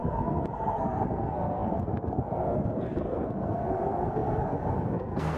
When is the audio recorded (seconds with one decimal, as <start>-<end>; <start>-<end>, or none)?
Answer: none